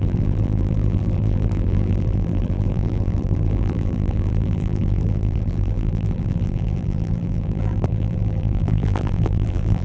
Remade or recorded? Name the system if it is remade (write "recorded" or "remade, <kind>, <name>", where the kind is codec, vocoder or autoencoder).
remade, vocoder, BigVGAN v2